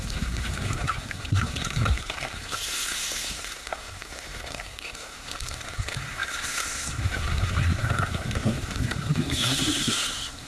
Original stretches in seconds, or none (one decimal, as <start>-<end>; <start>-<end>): none